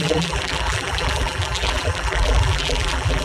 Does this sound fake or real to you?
fake